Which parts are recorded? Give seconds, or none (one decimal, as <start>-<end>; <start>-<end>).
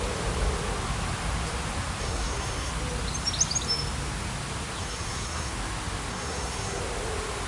0.0-2.0; 2.7-4.8; 5.5-6.1; 6.8-7.5